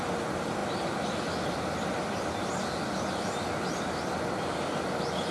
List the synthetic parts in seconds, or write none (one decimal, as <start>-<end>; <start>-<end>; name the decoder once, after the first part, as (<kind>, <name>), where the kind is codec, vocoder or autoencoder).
none